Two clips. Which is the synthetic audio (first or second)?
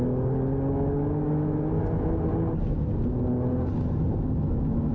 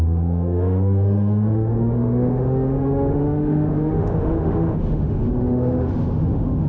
second